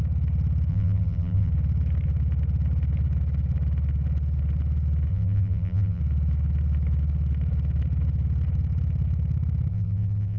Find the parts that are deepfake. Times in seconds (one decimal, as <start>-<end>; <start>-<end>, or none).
0.7-1.5; 5.1-6.0; 9.7-10.4